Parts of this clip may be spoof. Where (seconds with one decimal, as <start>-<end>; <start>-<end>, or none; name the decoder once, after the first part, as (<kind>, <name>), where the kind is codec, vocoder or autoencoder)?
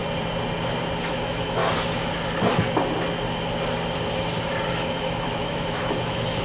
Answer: 1.0-1.6 (autoencoder, DAC-VAE); 4.7-6.4